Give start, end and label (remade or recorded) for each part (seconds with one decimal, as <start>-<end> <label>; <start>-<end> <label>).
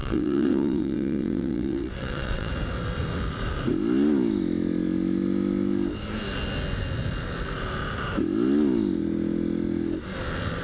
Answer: 0.0-2.5 remade; 2.5-10.6 recorded